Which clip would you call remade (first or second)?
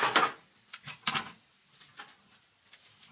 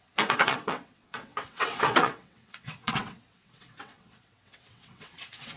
second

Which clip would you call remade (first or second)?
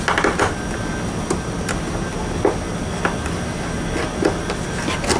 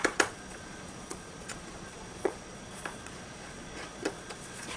second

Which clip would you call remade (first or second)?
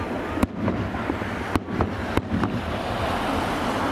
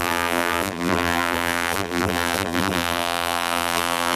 second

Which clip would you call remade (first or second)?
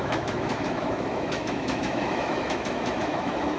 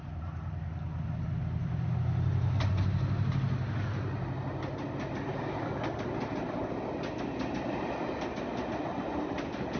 first